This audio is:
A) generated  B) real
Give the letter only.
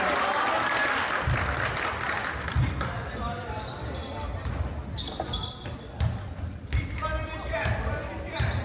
B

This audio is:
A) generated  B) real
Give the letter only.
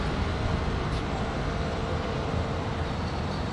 A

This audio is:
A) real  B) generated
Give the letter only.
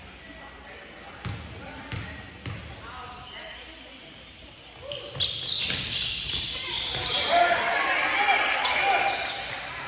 A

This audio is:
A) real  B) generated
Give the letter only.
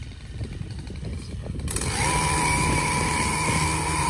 A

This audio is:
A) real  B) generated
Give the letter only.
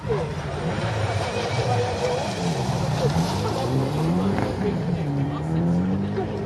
B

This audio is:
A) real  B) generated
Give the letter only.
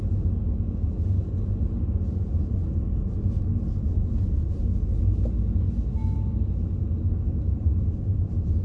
A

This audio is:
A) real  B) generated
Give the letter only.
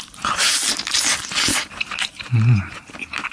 B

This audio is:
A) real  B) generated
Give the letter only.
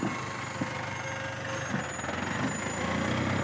A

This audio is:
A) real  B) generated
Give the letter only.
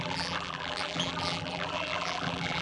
B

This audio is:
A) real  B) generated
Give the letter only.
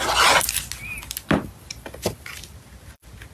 A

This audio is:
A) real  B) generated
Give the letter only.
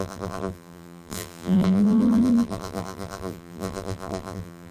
B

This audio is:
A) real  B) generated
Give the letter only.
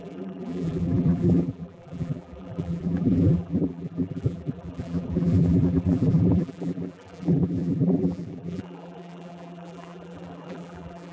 B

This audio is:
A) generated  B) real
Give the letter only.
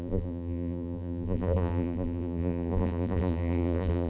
A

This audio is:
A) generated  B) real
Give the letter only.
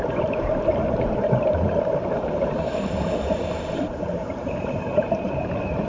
A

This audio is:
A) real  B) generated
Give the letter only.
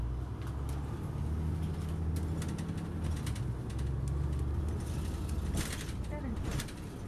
A